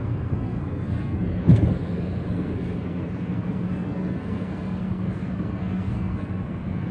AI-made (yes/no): yes